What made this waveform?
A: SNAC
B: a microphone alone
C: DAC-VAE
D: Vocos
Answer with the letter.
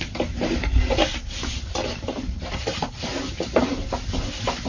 B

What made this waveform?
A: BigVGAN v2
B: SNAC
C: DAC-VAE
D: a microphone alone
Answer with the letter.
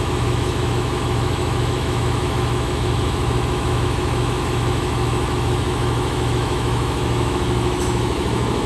C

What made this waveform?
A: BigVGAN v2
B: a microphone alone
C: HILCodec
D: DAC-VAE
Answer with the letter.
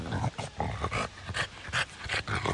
B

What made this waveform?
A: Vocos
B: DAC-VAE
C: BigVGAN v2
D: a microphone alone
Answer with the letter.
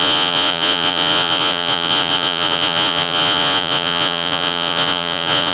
A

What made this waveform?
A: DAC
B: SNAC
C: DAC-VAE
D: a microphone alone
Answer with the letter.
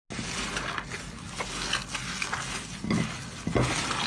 D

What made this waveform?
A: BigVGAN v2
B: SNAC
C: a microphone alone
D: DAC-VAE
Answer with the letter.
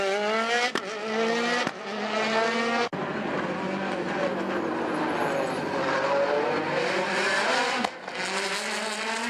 C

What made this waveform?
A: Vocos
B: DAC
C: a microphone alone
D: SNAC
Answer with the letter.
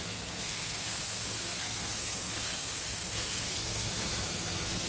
D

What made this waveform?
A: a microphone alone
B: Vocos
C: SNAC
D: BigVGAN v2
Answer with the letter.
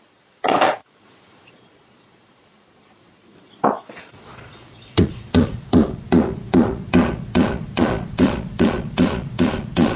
B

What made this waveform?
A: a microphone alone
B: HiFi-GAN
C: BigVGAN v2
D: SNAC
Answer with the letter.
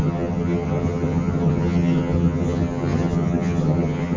B